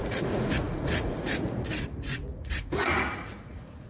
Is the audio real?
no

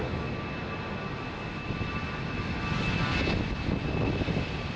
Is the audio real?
yes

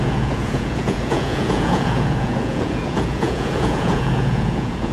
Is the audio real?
no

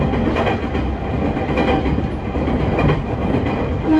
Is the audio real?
yes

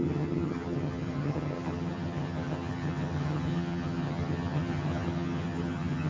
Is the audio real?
no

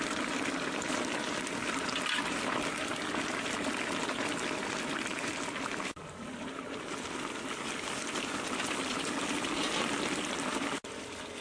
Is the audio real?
yes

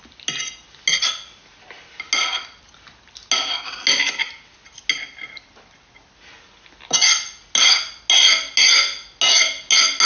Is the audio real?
yes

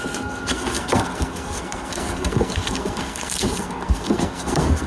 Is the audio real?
no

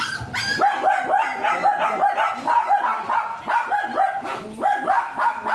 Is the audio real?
yes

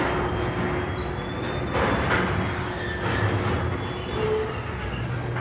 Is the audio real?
yes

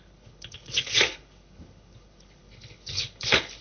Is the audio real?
no